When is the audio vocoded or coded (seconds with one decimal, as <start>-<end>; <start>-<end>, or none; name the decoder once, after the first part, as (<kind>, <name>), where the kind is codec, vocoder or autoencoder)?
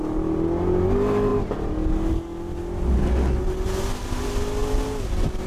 none